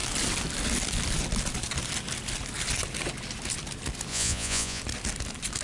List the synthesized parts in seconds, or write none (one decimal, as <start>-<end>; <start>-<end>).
4.1-4.8